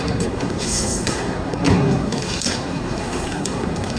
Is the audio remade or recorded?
remade